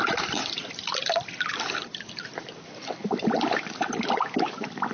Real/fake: real